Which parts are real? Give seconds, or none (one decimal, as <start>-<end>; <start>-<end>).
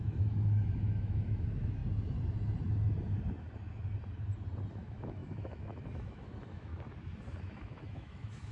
1.8-4.7; 6.7-7.4